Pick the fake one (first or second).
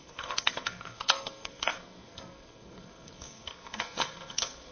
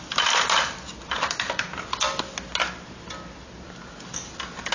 first